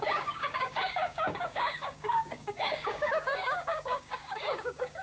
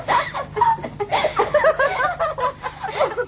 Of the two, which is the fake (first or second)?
first